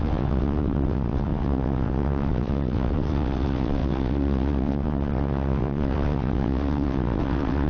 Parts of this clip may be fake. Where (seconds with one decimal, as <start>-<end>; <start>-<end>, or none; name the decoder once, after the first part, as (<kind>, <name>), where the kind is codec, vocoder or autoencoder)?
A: 0.0-7.7 (vocoder, WaveNeXt)